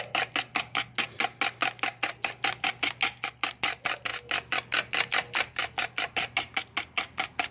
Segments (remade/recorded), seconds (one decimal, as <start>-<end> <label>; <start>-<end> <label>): 0.0-7.5 recorded